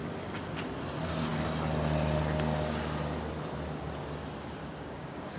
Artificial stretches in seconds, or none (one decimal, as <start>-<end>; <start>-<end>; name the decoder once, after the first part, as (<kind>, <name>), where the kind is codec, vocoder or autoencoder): 0.0-0.5 (codec, DAC); 4.6-5.4